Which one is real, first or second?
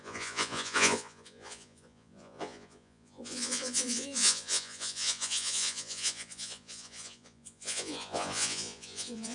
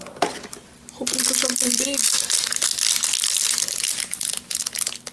second